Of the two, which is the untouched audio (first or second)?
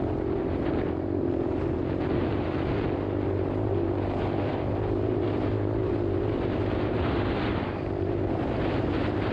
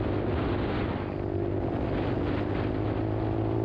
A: second